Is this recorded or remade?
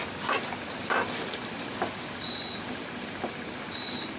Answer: recorded